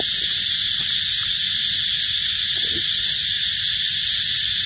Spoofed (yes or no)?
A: no